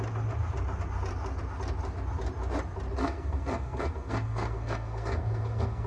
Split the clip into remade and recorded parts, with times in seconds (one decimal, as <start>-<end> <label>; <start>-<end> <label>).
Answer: 0.0-3.0 recorded; 3.0-5.9 remade